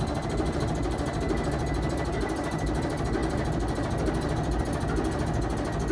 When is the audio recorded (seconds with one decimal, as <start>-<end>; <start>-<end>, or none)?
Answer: 0.0-5.9